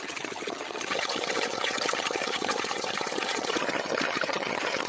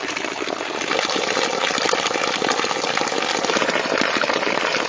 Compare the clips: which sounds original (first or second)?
second